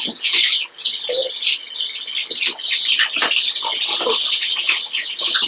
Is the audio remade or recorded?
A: recorded